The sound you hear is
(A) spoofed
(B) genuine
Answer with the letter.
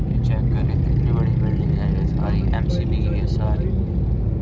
B